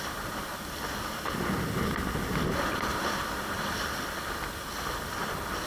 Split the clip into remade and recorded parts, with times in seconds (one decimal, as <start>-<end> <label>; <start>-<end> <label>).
0.0-5.7 recorded